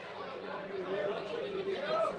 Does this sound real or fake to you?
fake